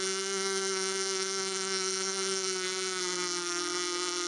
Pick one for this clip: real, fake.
fake